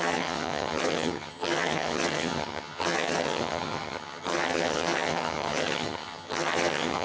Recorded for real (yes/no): no